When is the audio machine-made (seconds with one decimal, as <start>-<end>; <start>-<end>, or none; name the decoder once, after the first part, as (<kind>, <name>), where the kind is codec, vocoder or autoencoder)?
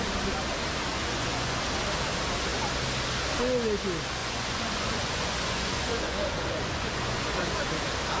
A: 0.9-1.6 (vocoder, Vocos); 4.2-7.7